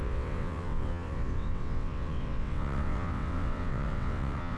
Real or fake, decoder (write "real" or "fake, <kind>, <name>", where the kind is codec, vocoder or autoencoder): fake, vocoder, WaveNeXt